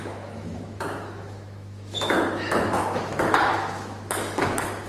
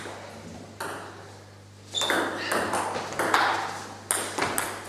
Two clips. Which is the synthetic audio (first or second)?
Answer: first